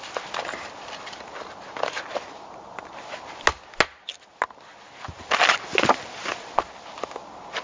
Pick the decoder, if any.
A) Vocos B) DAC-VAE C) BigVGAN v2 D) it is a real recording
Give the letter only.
D